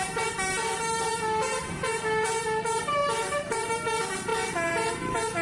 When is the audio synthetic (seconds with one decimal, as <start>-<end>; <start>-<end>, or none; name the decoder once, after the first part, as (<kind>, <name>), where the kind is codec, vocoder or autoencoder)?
3.0-3.7 (vocoder, BigVGAN v2)